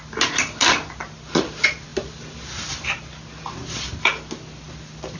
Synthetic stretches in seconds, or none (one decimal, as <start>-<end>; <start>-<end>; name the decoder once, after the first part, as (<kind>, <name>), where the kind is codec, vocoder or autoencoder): none